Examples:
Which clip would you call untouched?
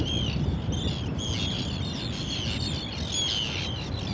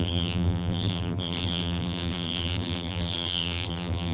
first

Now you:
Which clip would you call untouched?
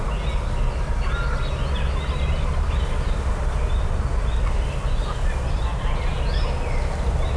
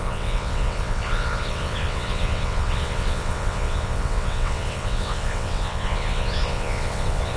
first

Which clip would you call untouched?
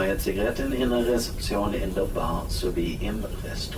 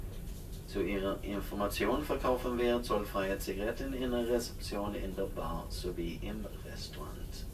second